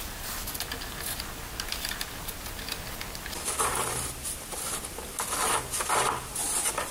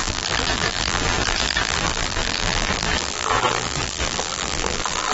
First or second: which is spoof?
second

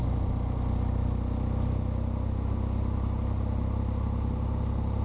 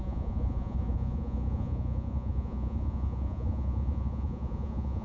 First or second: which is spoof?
second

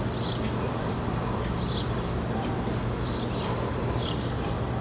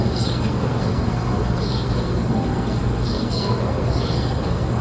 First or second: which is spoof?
second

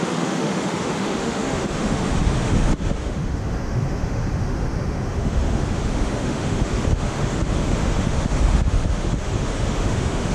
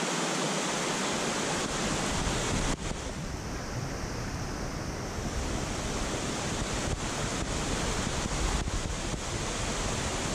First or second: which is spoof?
first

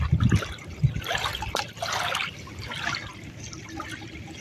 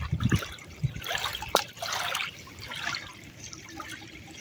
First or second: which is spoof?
second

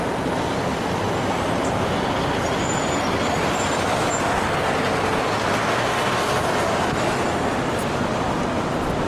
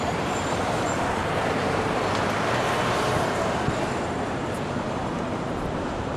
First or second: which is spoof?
second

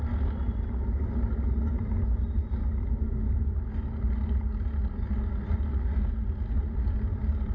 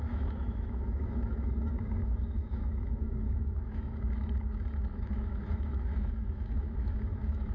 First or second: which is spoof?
second